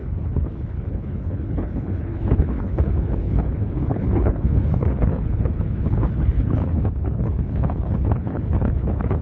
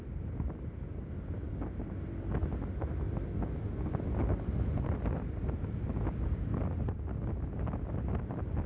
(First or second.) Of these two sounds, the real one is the second